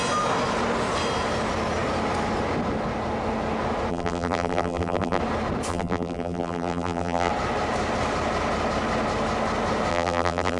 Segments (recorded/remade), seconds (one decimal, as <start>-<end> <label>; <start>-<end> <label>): 0.0-3.9 recorded; 3.9-5.2 remade; 5.2-5.7 recorded; 5.7-7.3 remade; 7.3-9.9 recorded; 9.9-10.6 remade